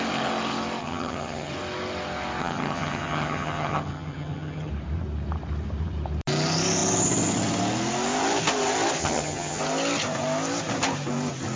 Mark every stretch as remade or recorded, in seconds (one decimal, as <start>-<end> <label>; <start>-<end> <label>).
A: 0.0-0.8 recorded; 0.8-1.5 remade; 1.5-2.4 recorded; 2.4-4.7 remade; 4.7-9.0 recorded; 9.0-9.6 remade; 9.6-11.6 recorded